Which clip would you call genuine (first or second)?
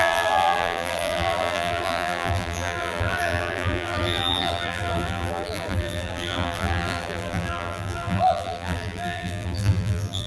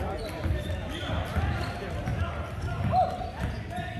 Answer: second